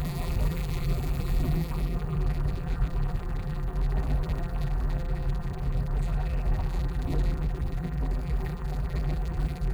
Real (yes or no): no